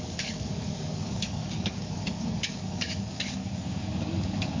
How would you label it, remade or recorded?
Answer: remade